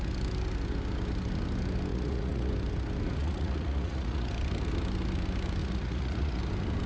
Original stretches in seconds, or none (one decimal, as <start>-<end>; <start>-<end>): 0.0-1.9; 2.5-3.2; 4.3-5.6; 6.4-6.9